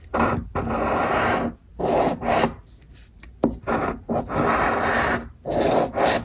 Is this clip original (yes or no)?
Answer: yes